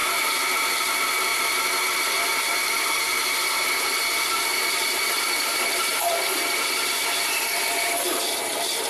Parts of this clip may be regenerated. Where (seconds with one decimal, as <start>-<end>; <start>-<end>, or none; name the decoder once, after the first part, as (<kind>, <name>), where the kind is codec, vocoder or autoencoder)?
0.8-1.3 (vocoder, BigVGAN v2); 2.5-3.2; 4.2-8.9